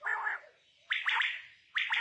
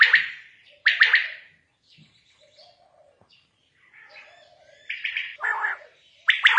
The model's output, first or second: second